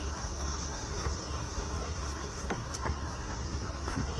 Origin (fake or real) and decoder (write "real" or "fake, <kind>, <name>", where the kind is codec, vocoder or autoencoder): fake, codec, SNAC